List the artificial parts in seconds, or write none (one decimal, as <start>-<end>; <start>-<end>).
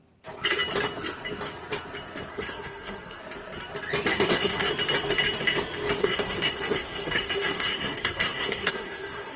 2.3-3.2; 4.1-4.7; 6.0-9.4